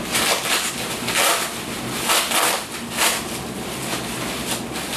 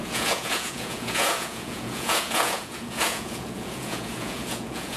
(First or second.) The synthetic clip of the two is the second